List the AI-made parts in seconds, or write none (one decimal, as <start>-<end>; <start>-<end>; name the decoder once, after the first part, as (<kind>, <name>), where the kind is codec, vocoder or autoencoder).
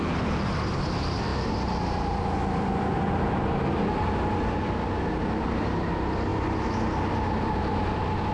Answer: none